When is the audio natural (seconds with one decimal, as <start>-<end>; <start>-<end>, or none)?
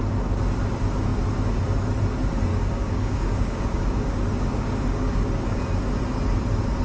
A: 0.0-2.5; 5.6-6.8